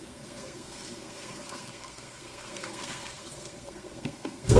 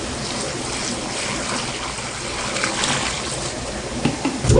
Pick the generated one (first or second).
first